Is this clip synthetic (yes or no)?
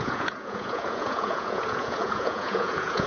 yes